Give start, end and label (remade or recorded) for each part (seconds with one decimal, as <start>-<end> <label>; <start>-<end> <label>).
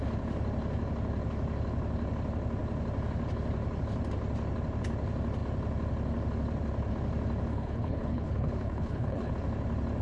0.0-7.5 recorded; 7.5-9.3 remade; 9.3-10.0 recorded